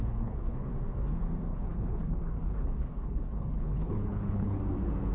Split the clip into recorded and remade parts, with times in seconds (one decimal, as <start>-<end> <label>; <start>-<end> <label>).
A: 0.0-0.7 remade; 0.7-1.5 recorded; 1.5-4.6 remade; 4.6-5.1 recorded